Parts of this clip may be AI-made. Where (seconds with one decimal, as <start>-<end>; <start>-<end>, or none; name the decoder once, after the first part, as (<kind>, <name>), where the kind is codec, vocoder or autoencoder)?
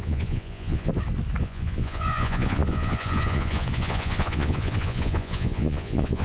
0.0-0.9 (vocoder, Vocos); 1.4-6.2